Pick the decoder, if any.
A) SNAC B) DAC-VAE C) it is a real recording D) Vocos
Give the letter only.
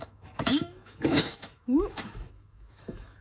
B